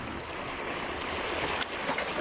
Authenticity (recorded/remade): recorded